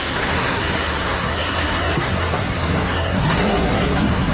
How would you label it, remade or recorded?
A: remade